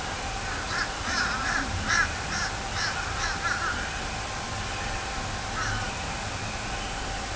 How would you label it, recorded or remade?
recorded